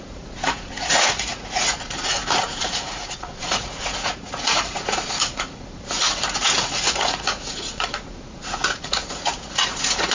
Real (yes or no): no